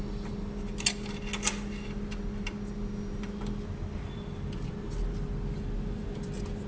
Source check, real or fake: real